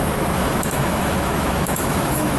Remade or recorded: remade